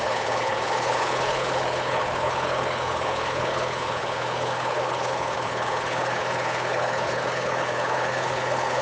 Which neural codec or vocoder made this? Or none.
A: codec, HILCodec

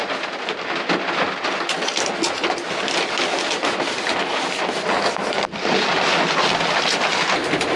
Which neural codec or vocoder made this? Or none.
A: none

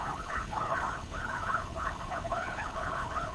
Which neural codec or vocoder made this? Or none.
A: codec, HILCodec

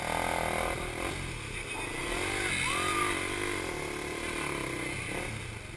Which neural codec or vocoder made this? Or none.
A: none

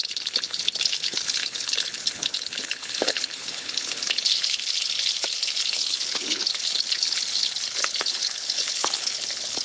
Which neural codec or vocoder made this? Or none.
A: codec, HILCodec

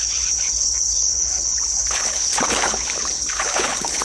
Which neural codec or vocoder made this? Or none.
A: codec, HILCodec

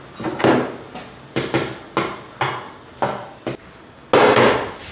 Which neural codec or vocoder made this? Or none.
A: none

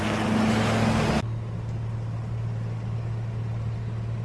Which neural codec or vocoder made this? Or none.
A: none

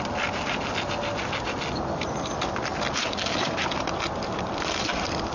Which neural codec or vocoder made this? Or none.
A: none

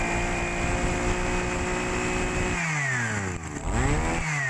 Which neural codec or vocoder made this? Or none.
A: none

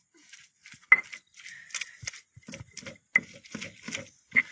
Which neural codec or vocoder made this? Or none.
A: none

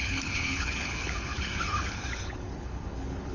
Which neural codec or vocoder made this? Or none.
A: codec, HILCodec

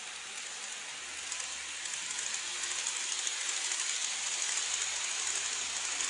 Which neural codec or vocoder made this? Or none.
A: none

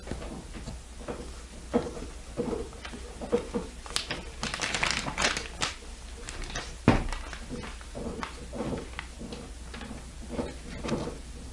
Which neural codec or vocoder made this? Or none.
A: none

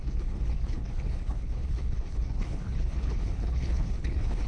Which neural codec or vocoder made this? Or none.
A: codec, HILCodec